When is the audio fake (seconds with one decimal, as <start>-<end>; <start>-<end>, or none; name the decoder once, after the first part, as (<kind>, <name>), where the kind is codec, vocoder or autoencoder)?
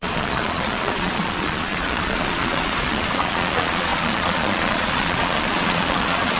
0.0-6.4 (vocoder, Vocos)